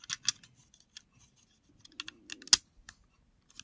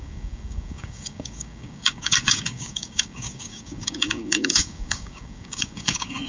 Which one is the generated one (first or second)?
second